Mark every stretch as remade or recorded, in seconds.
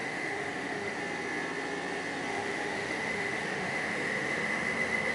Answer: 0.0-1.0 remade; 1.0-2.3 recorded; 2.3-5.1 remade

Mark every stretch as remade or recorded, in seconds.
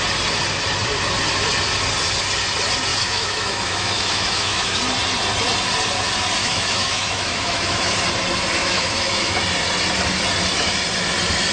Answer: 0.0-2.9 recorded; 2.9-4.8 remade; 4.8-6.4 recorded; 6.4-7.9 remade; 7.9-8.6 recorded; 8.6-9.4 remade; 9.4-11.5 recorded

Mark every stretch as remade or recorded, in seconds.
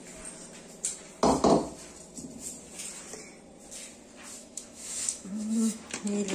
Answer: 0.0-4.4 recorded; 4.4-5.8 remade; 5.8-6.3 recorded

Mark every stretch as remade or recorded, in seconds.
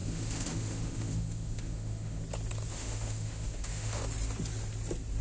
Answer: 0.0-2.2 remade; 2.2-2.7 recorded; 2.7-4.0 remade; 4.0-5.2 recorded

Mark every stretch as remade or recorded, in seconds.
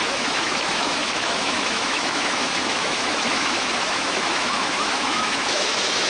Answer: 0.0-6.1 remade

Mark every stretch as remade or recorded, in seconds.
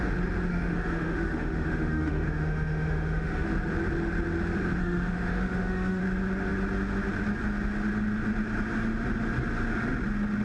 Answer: 0.0-0.5 recorded; 0.5-3.5 remade; 3.5-4.8 recorded; 4.8-6.0 remade; 6.0-10.4 recorded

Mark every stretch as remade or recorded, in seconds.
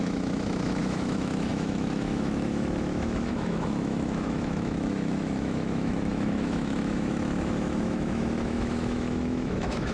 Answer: 0.0-9.9 remade